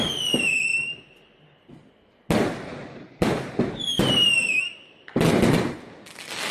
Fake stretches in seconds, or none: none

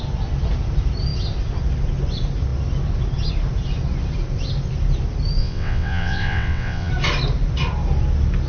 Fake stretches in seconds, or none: 5.4-6.9

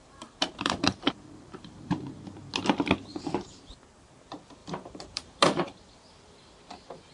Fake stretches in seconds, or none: 0.0-2.1; 3.1-3.6; 4.6-5.9

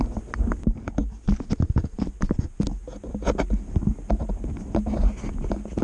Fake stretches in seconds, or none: none

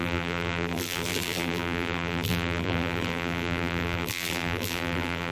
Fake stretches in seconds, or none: 0.0-5.3

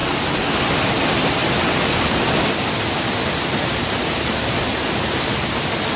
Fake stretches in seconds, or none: none

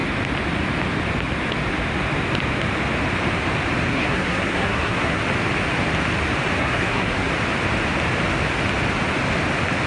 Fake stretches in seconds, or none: 3.9-5.2; 6.6-7.3

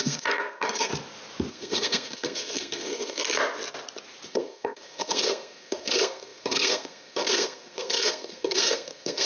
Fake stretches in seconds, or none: 0.0-0.9; 1.5-3.2; 4.3-9.3